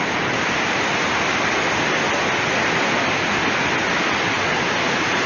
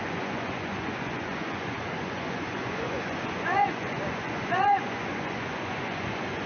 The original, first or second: first